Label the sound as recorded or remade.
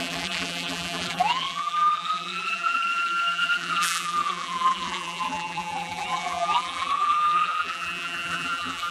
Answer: remade